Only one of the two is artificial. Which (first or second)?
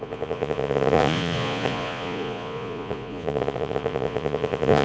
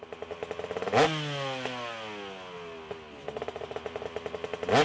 first